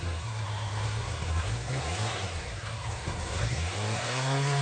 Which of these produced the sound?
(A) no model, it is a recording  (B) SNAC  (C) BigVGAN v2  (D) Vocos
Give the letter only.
B